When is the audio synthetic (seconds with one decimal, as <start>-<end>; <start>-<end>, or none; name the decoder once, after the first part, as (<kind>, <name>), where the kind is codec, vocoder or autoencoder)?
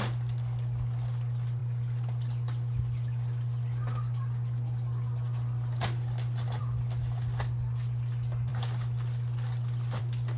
none